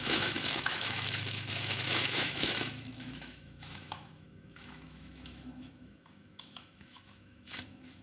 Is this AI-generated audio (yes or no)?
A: yes